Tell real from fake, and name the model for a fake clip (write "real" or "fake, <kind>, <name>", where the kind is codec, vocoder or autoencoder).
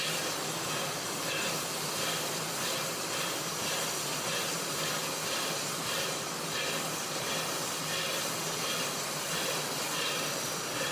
real